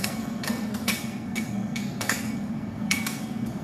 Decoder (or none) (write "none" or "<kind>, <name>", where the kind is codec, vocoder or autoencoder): codec, SNAC